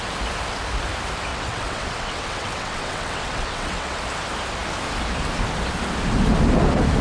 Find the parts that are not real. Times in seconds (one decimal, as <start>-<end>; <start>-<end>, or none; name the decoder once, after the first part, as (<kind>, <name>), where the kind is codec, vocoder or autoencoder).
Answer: 1.3-4.0 (vocoder, WaveNeXt)

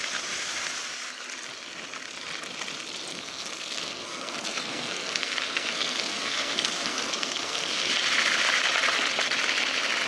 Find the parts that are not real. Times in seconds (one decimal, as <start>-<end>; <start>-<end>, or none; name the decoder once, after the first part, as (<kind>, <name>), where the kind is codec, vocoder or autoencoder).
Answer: 3.1-7.9 (codec, SNAC)

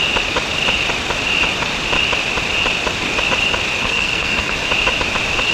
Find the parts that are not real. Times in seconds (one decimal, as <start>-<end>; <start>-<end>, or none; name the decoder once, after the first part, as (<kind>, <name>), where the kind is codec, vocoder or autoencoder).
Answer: 3.8-4.7 (codec, SNAC)

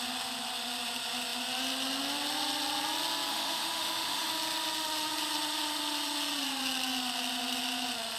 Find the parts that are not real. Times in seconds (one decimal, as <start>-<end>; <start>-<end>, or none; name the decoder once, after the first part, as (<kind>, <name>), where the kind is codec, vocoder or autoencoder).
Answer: 3.3-4.3 (autoencoder, DAC-VAE)

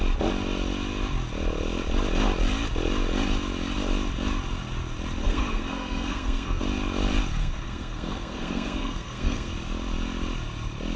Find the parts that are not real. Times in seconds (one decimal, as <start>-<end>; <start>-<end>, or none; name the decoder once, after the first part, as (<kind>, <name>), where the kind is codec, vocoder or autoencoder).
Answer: 5.2-6.6 (codec, SNAC); 7.4-9.5

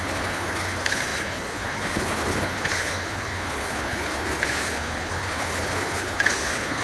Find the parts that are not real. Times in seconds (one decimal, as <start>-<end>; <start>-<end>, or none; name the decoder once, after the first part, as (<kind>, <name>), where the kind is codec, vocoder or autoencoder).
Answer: 0.0-6.8 (codec, HILCodec)

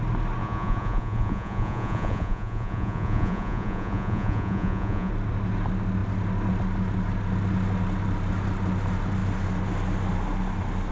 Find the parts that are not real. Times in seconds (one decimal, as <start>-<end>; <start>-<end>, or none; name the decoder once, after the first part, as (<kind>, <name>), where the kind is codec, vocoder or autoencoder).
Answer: 0.4-5.1 (vocoder, Vocos)